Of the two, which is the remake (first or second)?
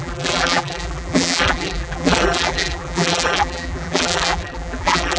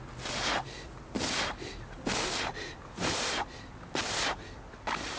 first